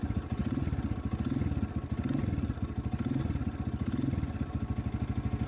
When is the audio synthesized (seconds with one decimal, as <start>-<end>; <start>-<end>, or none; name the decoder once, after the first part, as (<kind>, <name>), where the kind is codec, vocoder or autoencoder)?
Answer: none